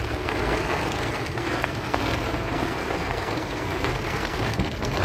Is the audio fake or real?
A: fake